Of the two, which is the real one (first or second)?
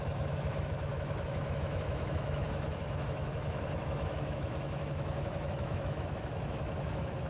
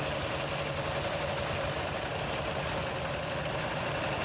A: second